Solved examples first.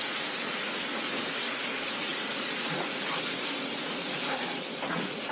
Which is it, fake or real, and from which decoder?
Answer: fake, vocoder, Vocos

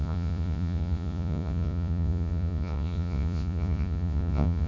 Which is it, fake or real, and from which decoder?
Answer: fake, vocoder, Vocos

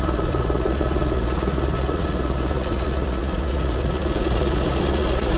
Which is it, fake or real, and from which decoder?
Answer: fake, vocoder, Vocos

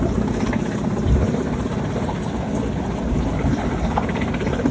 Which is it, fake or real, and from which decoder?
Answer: real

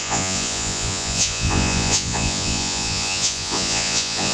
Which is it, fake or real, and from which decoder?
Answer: fake, vocoder, Vocos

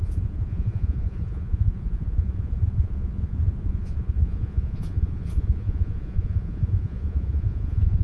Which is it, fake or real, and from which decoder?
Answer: fake, vocoder, Vocos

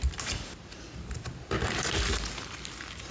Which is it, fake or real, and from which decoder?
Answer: real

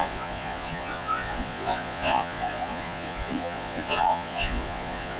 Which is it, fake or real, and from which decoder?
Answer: fake, vocoder, Vocos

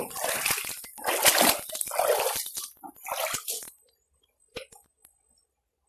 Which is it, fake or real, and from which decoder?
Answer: real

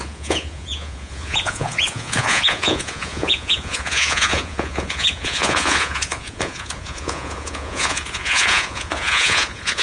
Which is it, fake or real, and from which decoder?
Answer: fake, vocoder, Vocos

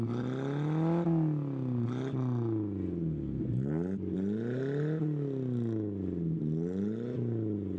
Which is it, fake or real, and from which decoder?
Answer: real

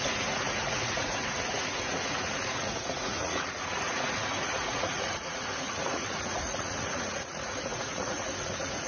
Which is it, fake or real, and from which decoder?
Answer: fake, vocoder, Vocos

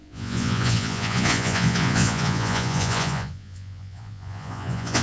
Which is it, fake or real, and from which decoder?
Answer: fake, vocoder, Vocos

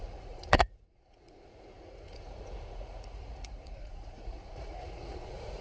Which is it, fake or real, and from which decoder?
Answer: fake, vocoder, Vocos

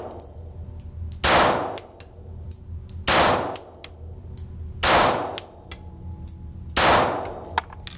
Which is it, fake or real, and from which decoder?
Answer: real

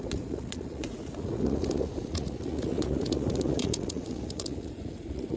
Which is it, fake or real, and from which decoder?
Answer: fake, vocoder, Vocos